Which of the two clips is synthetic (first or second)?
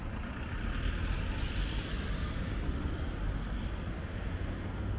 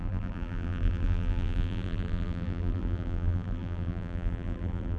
second